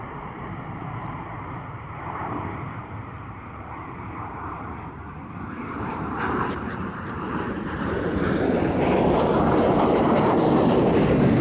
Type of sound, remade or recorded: remade